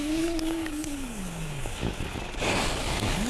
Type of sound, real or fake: fake